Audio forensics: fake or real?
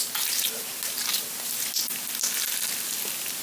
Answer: real